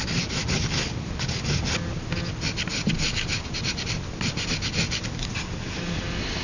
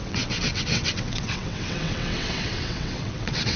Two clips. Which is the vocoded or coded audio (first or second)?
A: second